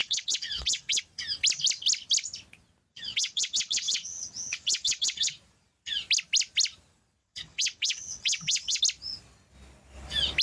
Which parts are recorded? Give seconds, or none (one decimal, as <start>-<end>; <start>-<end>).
1.0-2.9; 5.3-7.2; 8.8-10.4